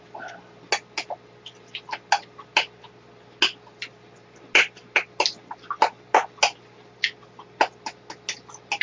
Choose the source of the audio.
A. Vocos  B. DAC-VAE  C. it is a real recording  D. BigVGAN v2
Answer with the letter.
C